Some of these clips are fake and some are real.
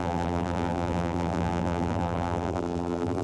fake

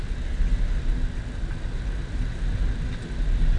real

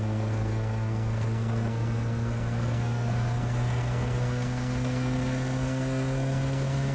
fake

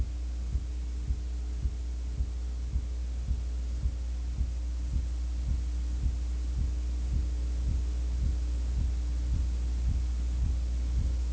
real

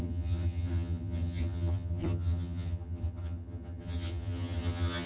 fake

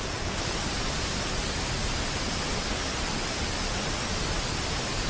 real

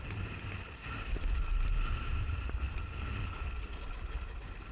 real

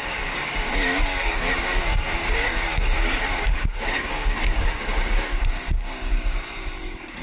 fake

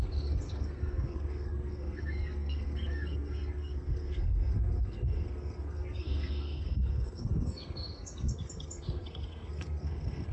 fake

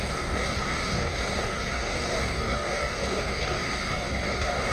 fake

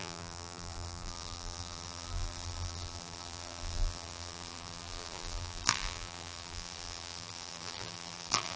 fake